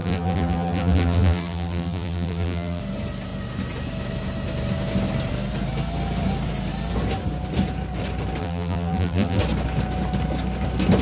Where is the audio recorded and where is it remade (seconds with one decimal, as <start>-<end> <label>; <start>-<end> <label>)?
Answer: 0.0-2.8 remade; 2.8-8.4 recorded; 8.4-9.4 remade; 9.4-11.0 recorded